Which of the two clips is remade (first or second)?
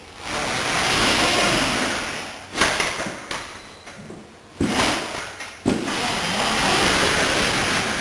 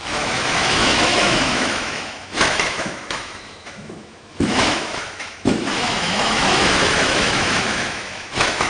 second